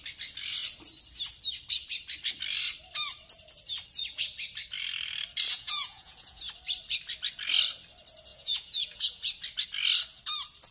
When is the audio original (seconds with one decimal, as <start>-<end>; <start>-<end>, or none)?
0.0-5.5; 6.4-8.3; 9.2-10.7